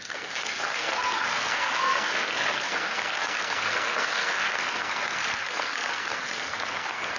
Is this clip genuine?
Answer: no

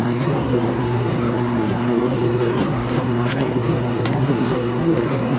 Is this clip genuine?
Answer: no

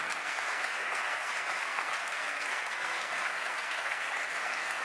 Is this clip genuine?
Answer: no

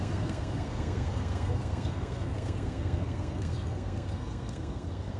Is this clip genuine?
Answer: no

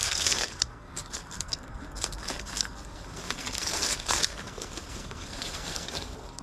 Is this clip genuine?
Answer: no